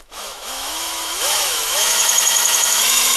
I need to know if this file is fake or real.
fake